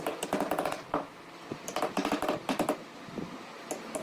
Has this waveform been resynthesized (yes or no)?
yes